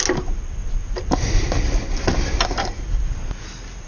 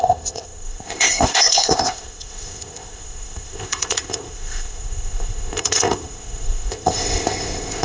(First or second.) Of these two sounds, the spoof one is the second